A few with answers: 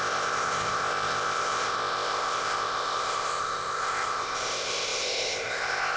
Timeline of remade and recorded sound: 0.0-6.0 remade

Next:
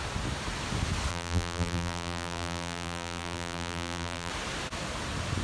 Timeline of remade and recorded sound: 0.0-1.1 recorded; 1.1-4.3 remade; 4.3-5.4 recorded